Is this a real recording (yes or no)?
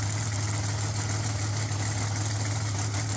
yes